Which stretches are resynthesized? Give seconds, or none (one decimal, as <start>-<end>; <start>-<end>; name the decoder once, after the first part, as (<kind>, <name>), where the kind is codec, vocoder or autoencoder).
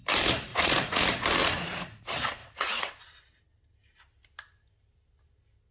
0.5-1.0 (vocoder, Vocos); 1.4-2.0; 2.4-2.9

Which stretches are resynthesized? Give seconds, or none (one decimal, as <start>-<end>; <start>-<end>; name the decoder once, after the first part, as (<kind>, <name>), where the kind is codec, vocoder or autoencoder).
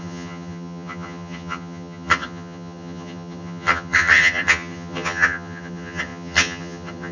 0.0-7.1 (vocoder, HiFi-GAN)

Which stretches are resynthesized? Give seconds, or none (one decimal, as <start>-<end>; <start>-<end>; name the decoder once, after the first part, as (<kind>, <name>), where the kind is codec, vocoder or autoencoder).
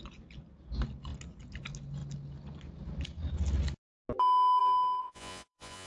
5.0-5.9 (vocoder, Vocos)